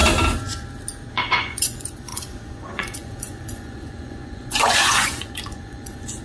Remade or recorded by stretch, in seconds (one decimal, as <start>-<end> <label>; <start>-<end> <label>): 0.0-1.1 recorded; 1.1-6.2 remade